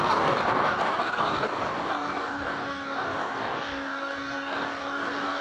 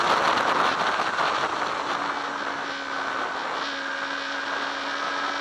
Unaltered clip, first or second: second